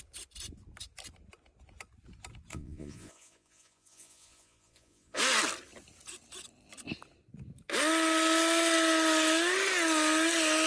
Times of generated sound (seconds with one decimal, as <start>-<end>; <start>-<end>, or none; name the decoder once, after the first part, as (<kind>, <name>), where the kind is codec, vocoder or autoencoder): 2.5-5.2 (vocoder, Vocos)